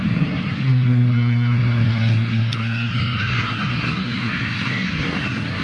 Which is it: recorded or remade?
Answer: remade